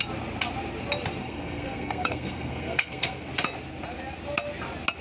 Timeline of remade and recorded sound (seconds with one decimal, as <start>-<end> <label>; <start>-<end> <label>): 0.0-1.2 recorded; 1.2-3.3 remade; 3.3-5.0 recorded